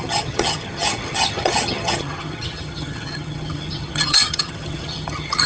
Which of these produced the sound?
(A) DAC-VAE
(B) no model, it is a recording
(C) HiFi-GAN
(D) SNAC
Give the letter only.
C